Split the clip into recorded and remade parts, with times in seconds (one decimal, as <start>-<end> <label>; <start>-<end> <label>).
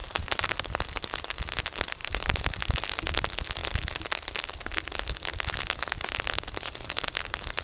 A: 0.0-0.6 remade; 0.6-2.0 recorded; 2.0-2.5 remade; 2.5-7.6 recorded